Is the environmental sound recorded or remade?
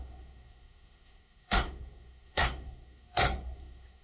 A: remade